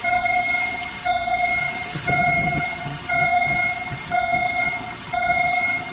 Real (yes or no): no